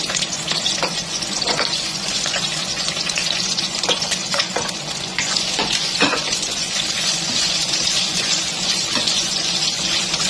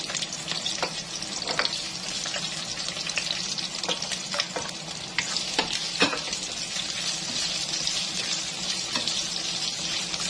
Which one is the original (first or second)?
second